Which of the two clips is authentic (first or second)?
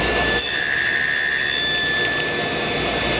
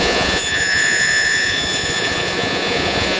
first